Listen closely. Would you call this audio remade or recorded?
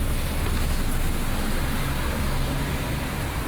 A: recorded